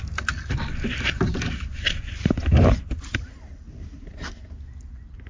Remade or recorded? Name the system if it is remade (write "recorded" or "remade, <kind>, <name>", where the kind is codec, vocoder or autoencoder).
recorded